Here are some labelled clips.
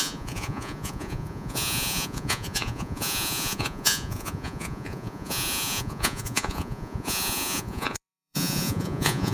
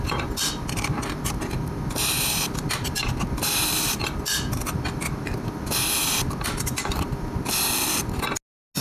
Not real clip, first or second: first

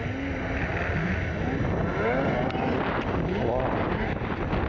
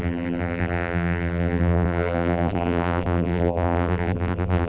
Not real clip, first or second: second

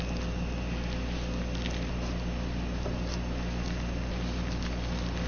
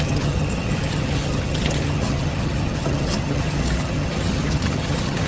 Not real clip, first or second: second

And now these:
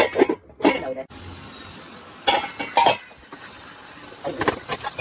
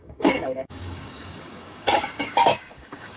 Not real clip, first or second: second